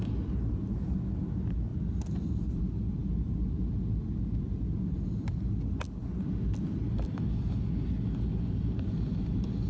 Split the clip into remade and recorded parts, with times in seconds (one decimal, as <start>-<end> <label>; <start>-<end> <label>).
0.0-9.7 recorded